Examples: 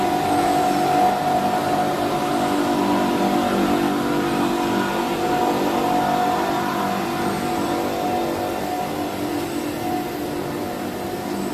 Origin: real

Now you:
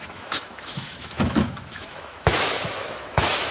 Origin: fake